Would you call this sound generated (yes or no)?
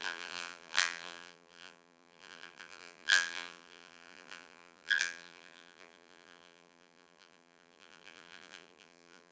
yes